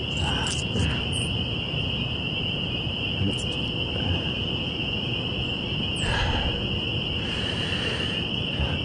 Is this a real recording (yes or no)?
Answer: yes